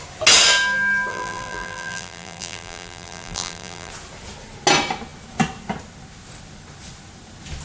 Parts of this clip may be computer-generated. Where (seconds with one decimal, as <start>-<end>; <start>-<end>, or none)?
1.1-3.9